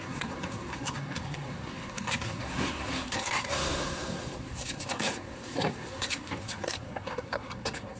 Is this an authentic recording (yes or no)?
no